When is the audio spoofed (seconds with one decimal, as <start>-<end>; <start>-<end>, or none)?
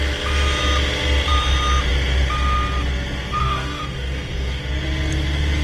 3.4-4.6